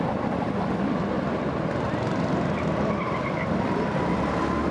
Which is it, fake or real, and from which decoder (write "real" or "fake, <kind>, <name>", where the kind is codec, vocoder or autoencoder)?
real